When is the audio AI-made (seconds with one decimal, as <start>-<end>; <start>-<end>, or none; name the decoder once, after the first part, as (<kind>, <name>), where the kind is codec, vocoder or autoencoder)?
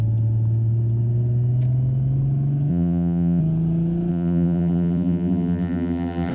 2.7-3.4 (vocoder, BigVGAN v2); 4.1-6.3